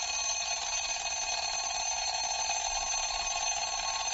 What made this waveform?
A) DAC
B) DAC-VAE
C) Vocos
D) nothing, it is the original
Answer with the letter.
C